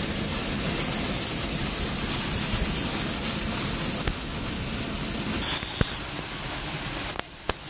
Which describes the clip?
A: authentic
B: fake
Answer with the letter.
A